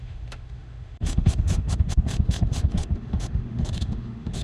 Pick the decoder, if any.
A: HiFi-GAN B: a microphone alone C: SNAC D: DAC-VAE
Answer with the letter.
D